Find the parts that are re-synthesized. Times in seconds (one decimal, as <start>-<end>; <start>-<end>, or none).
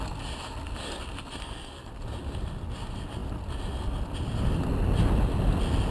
1.4-1.9